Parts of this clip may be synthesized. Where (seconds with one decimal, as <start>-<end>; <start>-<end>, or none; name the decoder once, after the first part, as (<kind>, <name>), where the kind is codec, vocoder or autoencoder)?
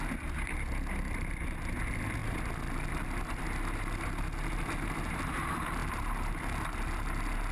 none